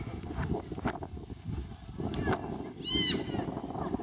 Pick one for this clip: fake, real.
real